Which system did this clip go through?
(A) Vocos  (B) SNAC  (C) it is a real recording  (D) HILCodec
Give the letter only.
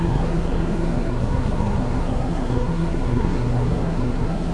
B